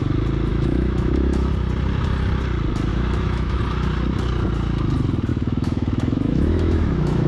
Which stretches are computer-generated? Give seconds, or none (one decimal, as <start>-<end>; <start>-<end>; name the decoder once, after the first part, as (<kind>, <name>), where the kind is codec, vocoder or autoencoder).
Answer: 0.5-1.5 (autoencoder, DAC-VAE); 2.9-3.6; 5.3-7.3